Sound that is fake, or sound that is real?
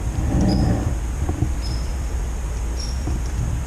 fake